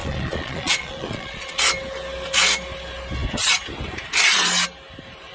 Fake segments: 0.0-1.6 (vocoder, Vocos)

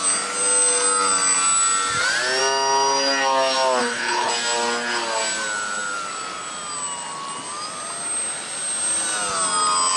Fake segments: 3.8-4.3 (codec, HILCodec)

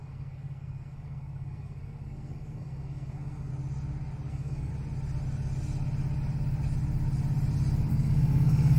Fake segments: 0.0-3.5 (codec, SNAC); 4.3-4.7; 7.9-8.8

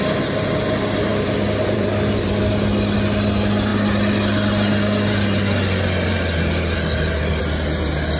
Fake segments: 1.1-2.4 (vocoder, BigVGAN v2)

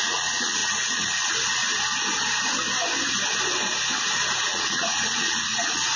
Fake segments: 0.0-1.6 (vocoder, Vocos); 4.4-6.0